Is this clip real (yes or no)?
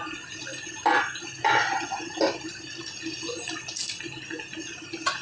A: yes